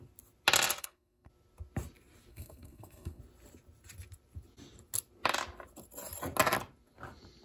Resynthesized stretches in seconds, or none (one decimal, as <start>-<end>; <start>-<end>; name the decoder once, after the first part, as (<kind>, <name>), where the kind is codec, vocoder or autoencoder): 0.8-1.3 (codec, SNAC); 2.3-3.2